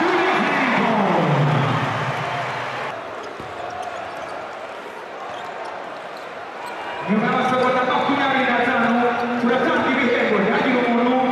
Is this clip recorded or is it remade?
recorded